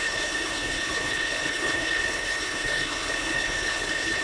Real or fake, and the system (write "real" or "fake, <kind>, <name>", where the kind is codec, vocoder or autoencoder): fake, codec, HILCodec